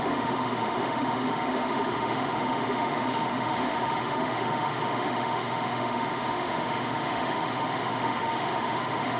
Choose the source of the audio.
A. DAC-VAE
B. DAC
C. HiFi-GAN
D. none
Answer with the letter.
A